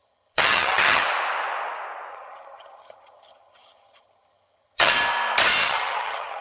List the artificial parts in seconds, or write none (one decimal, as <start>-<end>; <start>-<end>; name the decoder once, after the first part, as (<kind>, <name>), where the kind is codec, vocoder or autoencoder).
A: 0.0-1.0 (vocoder, HiFi-GAN); 2.1-4.9; 5.6-6.4